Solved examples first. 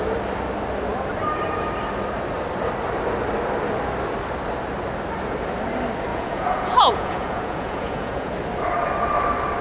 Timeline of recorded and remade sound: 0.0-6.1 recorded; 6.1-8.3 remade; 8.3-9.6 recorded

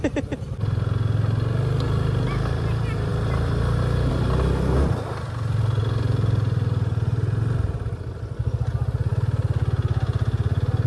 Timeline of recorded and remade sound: 0.0-10.9 recorded

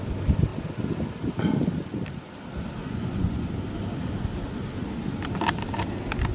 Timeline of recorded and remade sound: 0.0-2.8 recorded; 2.8-3.5 remade; 3.5-6.3 recorded

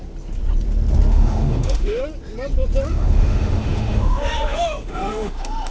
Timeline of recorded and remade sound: 0.0-1.1 recorded; 1.1-2.0 remade; 2.0-2.9 recorded; 2.9-5.7 remade

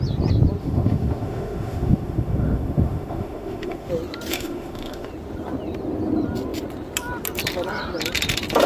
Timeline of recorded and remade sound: 0.0-0.6 recorded; 0.6-3.9 remade; 3.9-4.3 recorded; 4.3-5.1 remade; 5.1-8.7 recorded

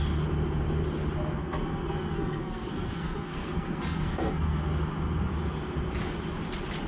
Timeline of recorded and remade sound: 0.0-1.4 recorded; 1.4-4.6 remade; 4.6-6.9 recorded

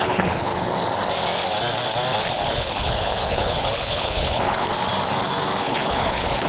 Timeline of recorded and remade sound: 0.0-0.7 remade; 0.7-2.3 recorded; 2.3-4.7 remade; 4.7-5.6 recorded; 5.6-6.5 remade

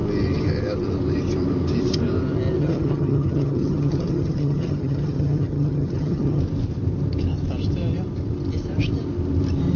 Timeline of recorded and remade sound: 0.0-2.6 recorded; 2.6-6.4 remade; 6.4-9.8 recorded